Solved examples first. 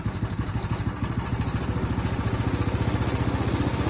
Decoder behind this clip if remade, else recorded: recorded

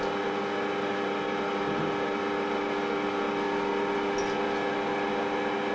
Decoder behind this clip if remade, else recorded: recorded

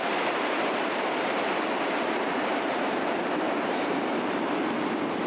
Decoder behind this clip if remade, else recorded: remade, vocoder, BigVGAN v2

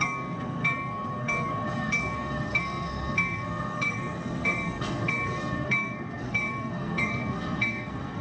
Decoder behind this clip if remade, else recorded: remade, codec, SNAC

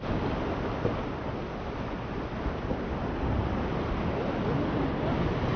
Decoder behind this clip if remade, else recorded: recorded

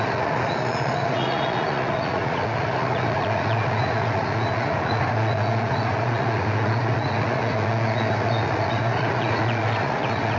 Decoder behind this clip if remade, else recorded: remade, vocoder, Vocos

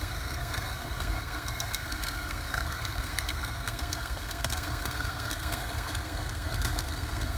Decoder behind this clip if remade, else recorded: remade, codec, SNAC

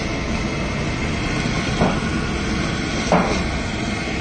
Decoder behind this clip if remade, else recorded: recorded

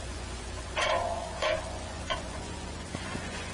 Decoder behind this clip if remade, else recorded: remade, vocoder, Vocos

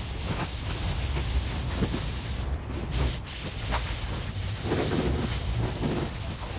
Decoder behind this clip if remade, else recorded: recorded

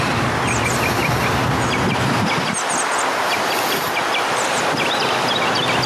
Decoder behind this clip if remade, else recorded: recorded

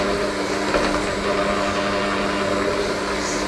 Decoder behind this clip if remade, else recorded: recorded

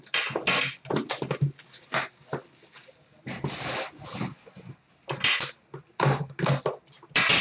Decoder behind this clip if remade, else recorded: recorded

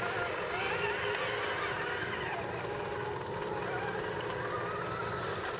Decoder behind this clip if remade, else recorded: recorded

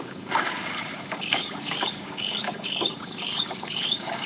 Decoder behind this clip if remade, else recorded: remade, codec, DAC